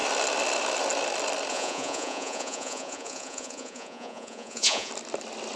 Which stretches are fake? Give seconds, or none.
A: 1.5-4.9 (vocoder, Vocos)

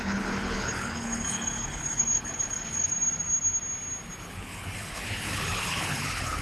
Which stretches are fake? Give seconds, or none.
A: 0.0-2.9 (codec, HILCodec); 4.2-6.4